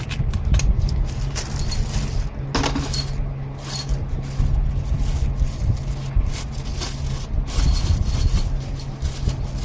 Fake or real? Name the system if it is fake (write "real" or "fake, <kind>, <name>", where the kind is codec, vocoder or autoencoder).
real